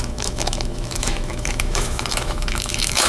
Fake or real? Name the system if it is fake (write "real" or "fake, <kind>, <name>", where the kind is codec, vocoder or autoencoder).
fake, autoencoder, DAC-VAE